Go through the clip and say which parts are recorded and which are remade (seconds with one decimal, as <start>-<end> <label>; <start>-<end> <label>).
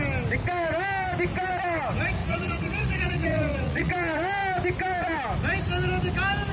0.0-2.2 recorded; 2.2-3.9 remade; 3.9-6.5 recorded